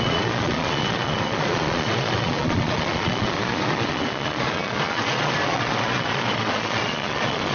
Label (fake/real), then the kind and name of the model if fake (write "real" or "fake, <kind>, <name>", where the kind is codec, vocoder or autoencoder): fake, vocoder, Vocos